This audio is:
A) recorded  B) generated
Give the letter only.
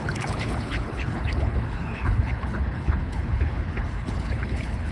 B